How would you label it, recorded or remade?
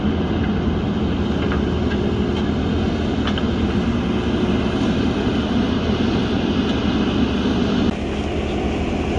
recorded